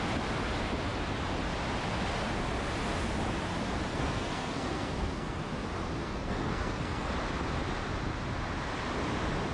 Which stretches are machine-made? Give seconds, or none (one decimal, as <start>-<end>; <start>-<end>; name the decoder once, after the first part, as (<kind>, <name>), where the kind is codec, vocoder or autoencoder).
3.9-5.4 (codec, SNAC); 6.0-7.1